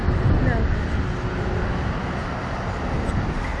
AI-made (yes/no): no